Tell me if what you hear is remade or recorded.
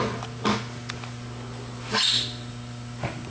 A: recorded